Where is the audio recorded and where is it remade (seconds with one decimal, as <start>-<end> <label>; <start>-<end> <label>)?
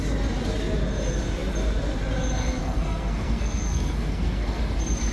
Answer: 0.0-2.6 recorded; 2.6-4.6 remade; 4.6-5.1 recorded